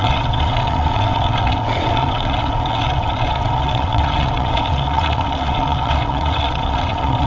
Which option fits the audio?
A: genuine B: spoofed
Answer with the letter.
B